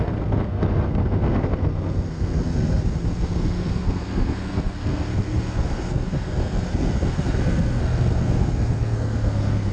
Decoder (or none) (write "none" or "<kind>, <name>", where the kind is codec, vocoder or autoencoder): codec, SNAC